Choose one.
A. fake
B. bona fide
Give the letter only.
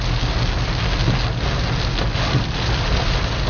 B